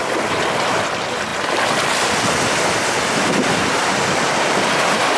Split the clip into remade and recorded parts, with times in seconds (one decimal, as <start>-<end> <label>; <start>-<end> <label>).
0.0-5.2 remade